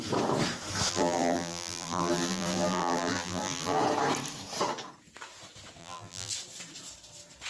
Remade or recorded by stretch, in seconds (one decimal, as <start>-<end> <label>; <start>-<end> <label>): 0.0-0.9 recorded; 0.9-3.8 remade; 3.8-5.8 recorded; 5.8-6.3 remade; 6.3-7.5 recorded